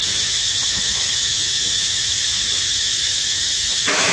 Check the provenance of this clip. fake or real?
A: fake